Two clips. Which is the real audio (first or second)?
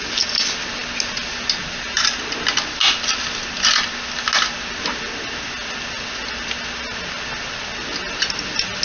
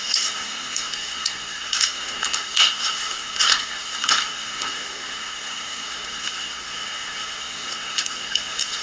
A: first